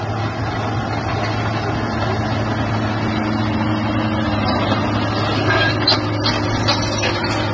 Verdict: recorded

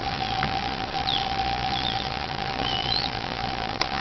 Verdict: remade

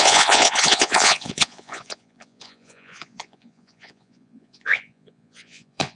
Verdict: remade